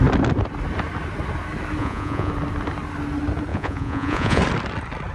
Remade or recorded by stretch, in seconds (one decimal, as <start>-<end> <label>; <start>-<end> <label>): 0.0-1.8 recorded; 1.8-2.3 remade; 2.3-3.5 recorded; 3.5-4.4 remade; 4.4-5.1 recorded

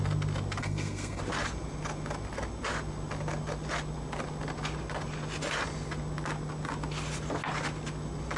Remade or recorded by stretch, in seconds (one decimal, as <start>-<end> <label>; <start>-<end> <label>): 0.0-0.6 recorded; 0.6-1.2 remade; 1.2-8.4 recorded